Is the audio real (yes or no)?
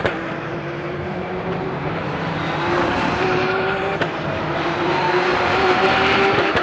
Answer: no